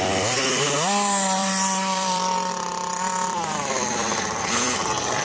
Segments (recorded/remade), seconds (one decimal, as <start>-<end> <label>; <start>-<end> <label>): 0.0-5.2 remade